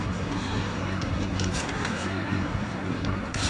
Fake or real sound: fake